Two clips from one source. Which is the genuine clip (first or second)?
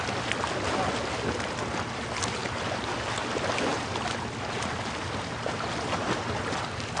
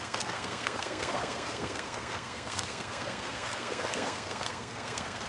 first